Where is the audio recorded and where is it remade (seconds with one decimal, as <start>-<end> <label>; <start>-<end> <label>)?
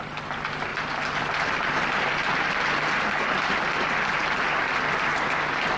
0.0-5.8 recorded